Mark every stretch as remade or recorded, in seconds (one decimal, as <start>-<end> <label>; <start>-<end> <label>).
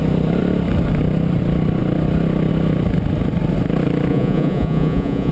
0.0-4.1 recorded; 4.1-5.3 remade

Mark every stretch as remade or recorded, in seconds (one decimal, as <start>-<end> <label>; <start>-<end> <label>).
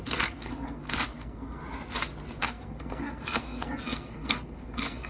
0.0-1.6 remade; 1.6-2.4 recorded; 2.4-5.1 remade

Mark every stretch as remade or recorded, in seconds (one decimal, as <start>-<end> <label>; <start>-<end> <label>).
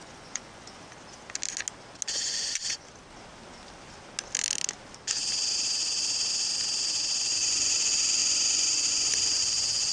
0.0-0.9 remade; 0.9-2.1 recorded; 2.1-2.9 remade; 2.9-7.2 recorded; 7.2-9.9 remade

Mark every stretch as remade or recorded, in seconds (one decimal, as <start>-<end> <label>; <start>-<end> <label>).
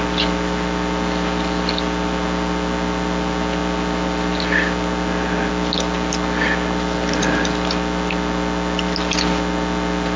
0.0-10.2 recorded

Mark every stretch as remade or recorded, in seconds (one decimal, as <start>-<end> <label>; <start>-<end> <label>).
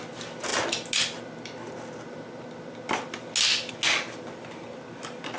0.0-5.4 recorded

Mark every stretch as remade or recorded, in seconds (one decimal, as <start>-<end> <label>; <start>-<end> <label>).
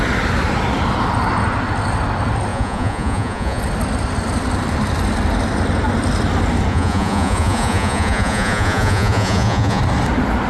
0.0-2.5 recorded; 2.5-3.6 remade; 3.6-6.7 recorded; 6.7-9.8 remade; 9.8-10.5 recorded